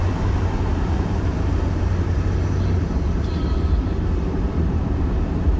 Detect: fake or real fake